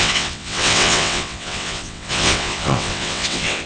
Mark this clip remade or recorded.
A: remade